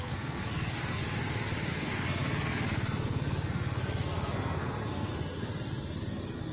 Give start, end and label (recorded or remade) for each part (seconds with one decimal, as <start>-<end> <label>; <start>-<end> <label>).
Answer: 0.0-1.0 remade; 1.0-1.7 recorded; 1.7-5.5 remade; 5.5-6.1 recorded; 6.1-6.5 remade